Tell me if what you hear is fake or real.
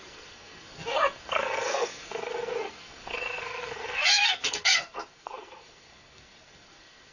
fake